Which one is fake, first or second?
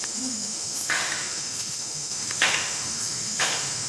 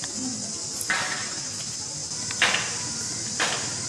first